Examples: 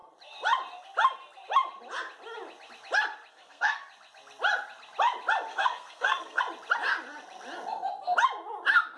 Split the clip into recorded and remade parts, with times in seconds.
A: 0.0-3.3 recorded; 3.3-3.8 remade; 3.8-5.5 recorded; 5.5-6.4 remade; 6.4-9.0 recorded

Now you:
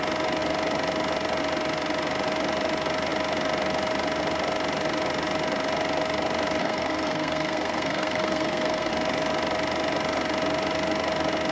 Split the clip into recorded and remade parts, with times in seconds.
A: 0.0-6.6 recorded; 6.6-8.9 remade; 8.9-11.5 recorded

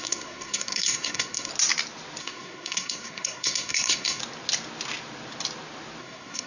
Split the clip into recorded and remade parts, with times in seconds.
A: 0.0-1.5 remade; 1.5-2.2 recorded; 2.2-4.2 remade; 4.2-6.0 recorded; 6.0-6.5 remade

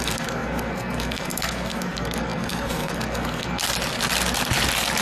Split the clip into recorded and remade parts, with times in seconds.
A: 0.0-3.6 remade; 3.6-5.0 recorded